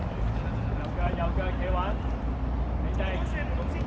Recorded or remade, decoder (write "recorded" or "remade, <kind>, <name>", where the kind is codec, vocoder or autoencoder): recorded